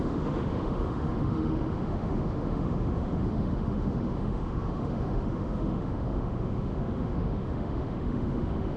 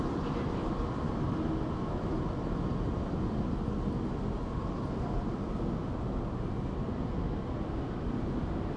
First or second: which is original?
second